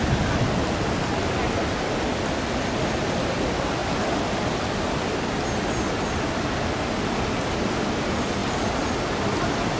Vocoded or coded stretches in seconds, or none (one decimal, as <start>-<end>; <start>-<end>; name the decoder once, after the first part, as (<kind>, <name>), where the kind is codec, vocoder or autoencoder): none